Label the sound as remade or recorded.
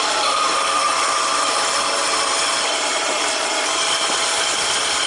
recorded